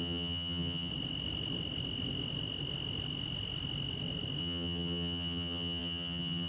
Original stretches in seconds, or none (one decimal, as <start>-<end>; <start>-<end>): 0.9-4.4